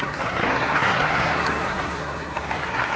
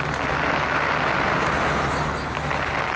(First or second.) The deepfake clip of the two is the first